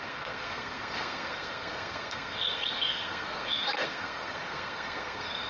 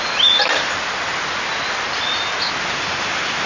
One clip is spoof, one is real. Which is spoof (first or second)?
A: first